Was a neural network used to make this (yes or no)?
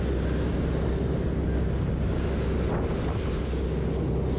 no